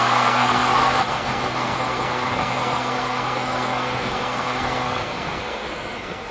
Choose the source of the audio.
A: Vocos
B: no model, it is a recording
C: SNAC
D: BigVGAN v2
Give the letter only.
C